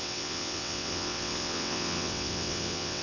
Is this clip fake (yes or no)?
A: yes